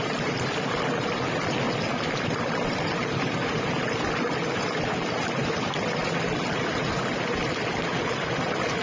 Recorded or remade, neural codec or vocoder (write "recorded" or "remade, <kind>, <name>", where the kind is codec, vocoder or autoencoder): recorded